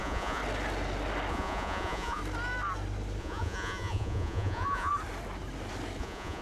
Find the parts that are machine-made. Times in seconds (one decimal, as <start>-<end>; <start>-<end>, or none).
0.0-0.4; 1.3-2.2; 3.2-4.9; 6.0-6.4